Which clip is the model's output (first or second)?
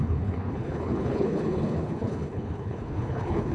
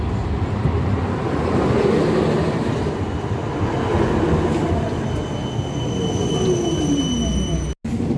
first